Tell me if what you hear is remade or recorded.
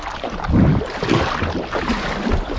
recorded